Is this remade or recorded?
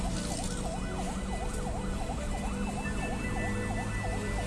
recorded